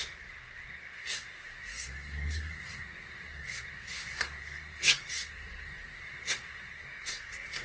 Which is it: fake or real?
fake